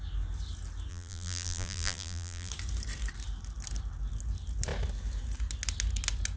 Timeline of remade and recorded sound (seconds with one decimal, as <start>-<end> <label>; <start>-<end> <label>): 0.0-0.9 recorded; 0.9-2.5 remade; 2.5-6.4 recorded

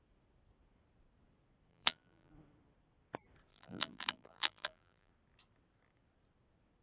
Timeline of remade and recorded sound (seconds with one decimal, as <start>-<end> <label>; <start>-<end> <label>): 0.0-1.7 recorded; 1.7-2.3 remade; 2.3-3.5 recorded; 3.5-5.1 remade; 5.1-6.8 recorded

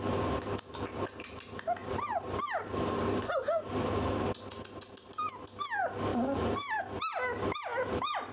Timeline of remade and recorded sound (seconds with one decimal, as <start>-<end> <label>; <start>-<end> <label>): 0.0-1.8 recorded; 1.8-3.4 remade; 3.4-6.1 recorded; 6.1-6.8 remade; 6.8-8.3 recorded

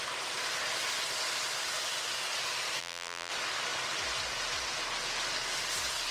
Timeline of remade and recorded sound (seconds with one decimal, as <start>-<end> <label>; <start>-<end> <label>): 0.0-2.8 recorded; 2.8-3.3 remade; 3.3-6.1 recorded

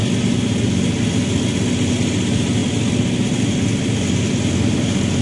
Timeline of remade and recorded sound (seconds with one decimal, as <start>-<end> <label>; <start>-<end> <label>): 0.0-5.2 recorded

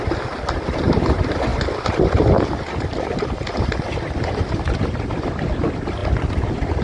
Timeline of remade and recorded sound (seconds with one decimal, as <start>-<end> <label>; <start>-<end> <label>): 0.0-1.5 recorded; 1.5-5.5 remade; 5.5-6.0 recorded; 6.0-6.8 remade

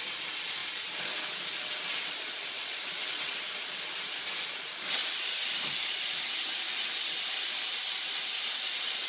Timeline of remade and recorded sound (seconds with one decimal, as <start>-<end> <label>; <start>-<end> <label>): 0.0-9.1 recorded